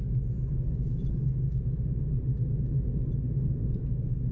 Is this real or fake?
real